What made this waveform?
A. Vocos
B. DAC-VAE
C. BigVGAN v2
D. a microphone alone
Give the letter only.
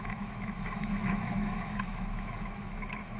B